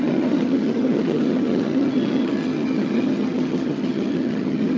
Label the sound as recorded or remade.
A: remade